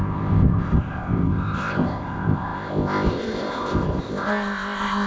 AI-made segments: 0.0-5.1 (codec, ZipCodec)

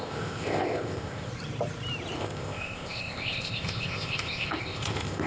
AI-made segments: 0.0-1.3 (codec, ZipCodec); 2.2-5.3

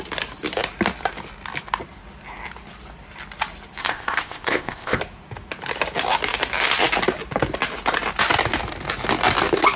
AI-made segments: 3.8-5.0 (codec, ZipCodec)

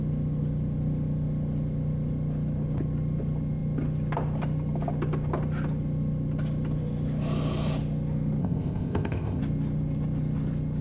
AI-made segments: 8.4-9.4 (codec, ZipCodec)

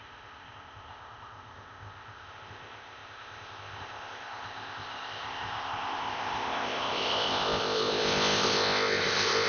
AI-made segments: 0.0-9.5 (codec, ZipCodec)

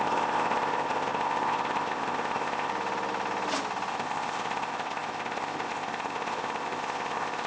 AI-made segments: 0.0-2.7 (codec, ZipCodec); 3.9-7.5